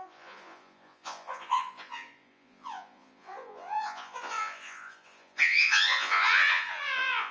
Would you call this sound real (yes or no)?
no